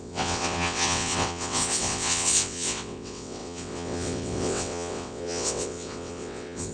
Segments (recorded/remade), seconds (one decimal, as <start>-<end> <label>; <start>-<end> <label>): 0.0-6.7 remade